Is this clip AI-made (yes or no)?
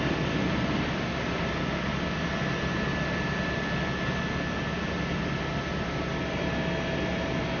no